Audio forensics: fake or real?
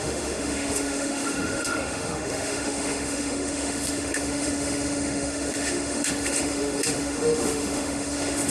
fake